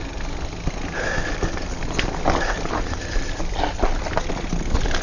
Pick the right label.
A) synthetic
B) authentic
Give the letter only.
B